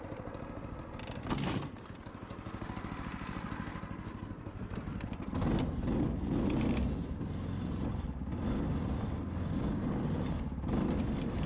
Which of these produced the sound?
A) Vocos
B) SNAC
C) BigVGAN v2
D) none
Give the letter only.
D